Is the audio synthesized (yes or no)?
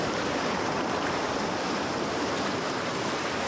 no